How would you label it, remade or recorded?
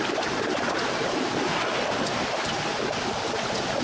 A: recorded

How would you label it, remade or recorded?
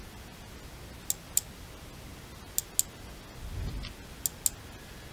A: recorded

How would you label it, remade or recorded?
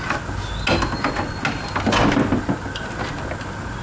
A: recorded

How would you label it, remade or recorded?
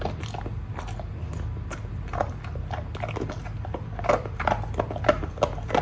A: recorded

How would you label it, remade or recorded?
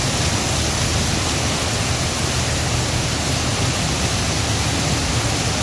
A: recorded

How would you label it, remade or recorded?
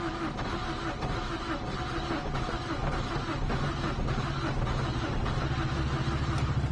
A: recorded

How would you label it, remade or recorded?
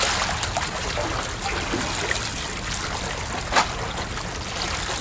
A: recorded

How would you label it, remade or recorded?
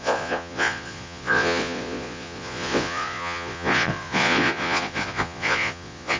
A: remade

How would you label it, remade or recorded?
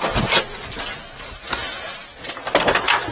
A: recorded